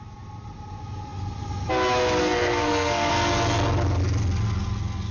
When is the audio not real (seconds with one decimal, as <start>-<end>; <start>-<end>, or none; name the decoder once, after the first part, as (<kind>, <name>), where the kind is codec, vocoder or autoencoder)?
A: 2.2-3.1 (codec, SNAC)